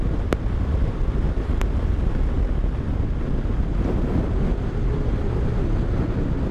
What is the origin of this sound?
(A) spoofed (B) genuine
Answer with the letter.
B